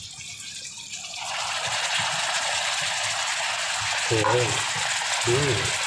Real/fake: real